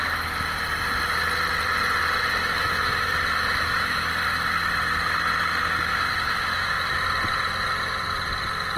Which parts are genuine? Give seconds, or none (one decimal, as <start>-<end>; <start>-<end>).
0.0-2.4; 4.1-5.9; 6.9-8.8